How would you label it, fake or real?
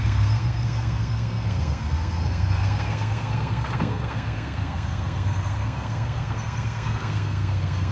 fake